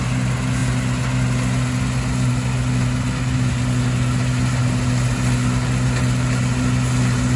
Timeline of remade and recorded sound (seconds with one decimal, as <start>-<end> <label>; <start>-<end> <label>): 0.0-7.4 recorded